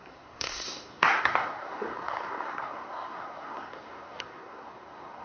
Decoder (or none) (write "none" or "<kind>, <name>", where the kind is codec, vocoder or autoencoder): codec, SNAC